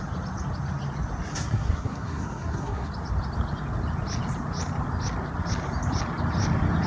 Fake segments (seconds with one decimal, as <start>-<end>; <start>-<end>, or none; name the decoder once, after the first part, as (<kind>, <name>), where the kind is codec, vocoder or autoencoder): 1.3-2.9 (codec, SNAC)